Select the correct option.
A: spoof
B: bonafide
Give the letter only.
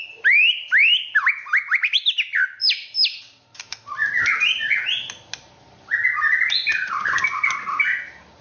B